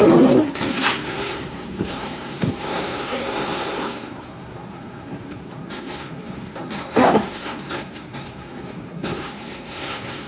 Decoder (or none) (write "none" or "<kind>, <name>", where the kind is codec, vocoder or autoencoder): codec, SNAC